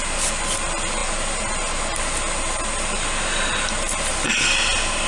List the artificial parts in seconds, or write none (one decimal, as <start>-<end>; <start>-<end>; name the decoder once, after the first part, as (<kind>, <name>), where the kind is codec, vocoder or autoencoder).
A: none